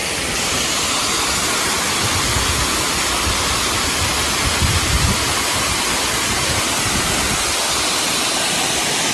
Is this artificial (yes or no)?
no